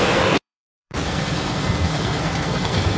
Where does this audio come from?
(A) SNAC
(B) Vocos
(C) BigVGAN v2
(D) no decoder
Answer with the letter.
A